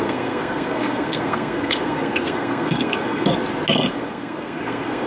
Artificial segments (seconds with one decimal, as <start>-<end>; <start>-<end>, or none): 0.0-3.3; 3.9-5.1